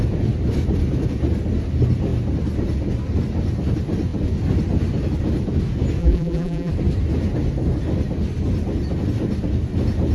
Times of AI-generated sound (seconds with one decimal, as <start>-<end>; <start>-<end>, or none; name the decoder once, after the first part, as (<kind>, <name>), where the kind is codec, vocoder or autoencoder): 6.0-6.7 (vocoder, BigVGAN v2)